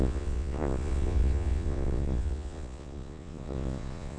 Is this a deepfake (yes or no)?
yes